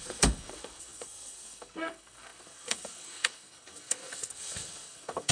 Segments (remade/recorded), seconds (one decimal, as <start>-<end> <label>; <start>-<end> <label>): 0.0-5.3 remade